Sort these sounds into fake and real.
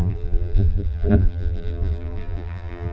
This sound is fake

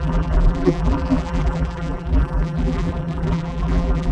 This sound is fake